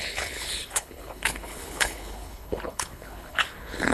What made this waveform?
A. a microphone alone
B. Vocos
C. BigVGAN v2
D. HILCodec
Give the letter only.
D